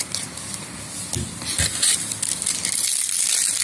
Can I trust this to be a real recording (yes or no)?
yes